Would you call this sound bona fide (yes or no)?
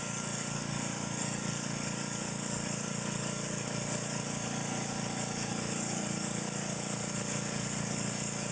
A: no